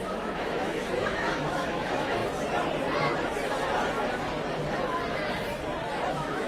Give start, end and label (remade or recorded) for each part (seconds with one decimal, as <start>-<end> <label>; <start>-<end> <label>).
0.0-2.2 remade; 2.2-6.1 recorded; 6.1-6.5 remade